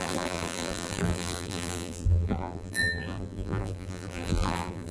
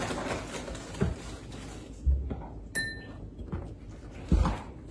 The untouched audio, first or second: second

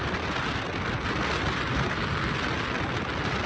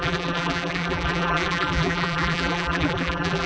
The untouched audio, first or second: first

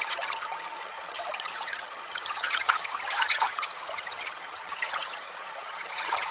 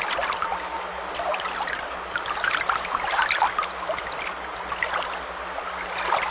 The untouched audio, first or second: second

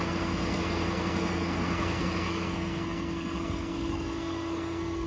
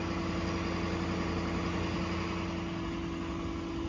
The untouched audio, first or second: second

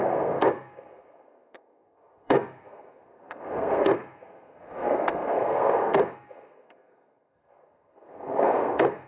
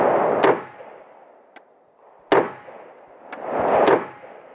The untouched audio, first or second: second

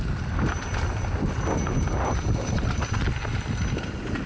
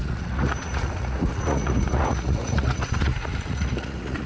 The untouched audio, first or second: first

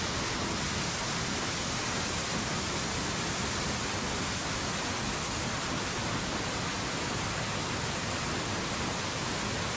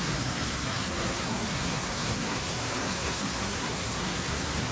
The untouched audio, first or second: first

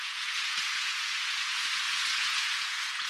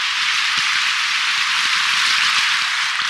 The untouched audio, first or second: second